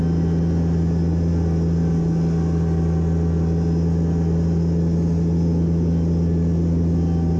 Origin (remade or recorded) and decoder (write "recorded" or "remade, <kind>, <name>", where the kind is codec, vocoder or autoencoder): recorded